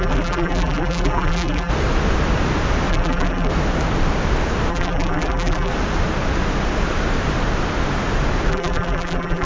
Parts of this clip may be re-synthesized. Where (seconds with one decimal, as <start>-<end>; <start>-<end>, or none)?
0.0-1.7; 2.9-3.5; 4.7-5.7; 8.5-9.5